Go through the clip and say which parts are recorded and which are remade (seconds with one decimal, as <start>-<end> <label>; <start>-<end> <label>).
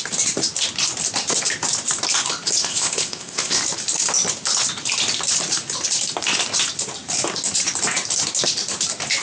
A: 0.0-2.6 recorded; 2.6-3.6 remade; 3.6-9.2 recorded